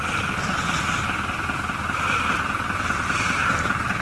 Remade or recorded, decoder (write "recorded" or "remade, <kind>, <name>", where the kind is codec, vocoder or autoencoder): recorded